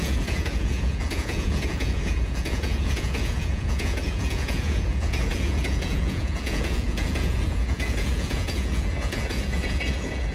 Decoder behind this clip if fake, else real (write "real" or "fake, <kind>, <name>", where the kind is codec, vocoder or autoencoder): fake, vocoder, Vocos